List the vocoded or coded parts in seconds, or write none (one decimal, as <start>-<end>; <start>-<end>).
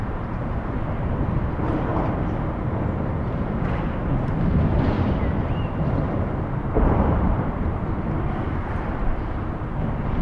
0.0-1.9; 6.1-10.2